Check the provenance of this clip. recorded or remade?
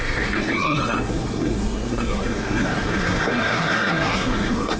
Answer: remade